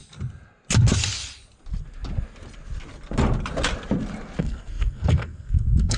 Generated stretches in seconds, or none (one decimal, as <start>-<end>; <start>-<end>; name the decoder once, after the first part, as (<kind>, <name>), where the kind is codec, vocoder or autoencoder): 4.4-6.0 (codec, SNAC)